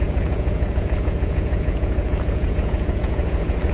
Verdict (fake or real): fake